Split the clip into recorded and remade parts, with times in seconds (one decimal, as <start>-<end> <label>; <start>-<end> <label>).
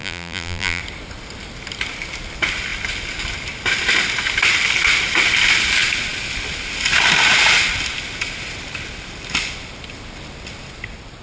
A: 0.0-0.8 remade; 0.8-11.2 recorded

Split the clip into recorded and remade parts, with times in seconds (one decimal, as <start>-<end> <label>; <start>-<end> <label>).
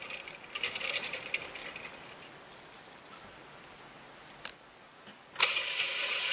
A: 0.0-1.6 remade; 1.6-5.4 recorded; 5.4-6.3 remade